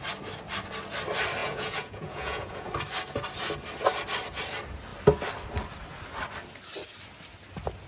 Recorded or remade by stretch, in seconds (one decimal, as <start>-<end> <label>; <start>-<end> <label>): 0.0-1.4 recorded; 1.4-2.7 remade; 2.7-7.9 recorded